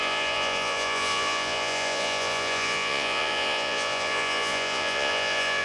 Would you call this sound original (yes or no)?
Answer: no